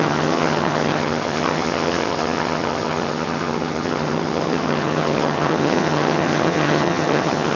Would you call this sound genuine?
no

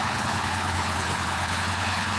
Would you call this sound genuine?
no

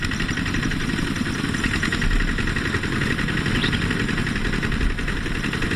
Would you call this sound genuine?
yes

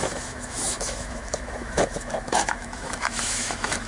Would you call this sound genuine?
no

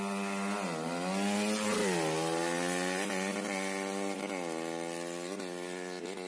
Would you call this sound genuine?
yes